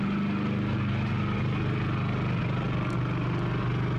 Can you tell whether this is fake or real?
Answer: real